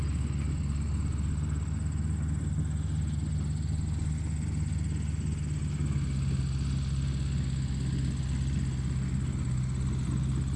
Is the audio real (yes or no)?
yes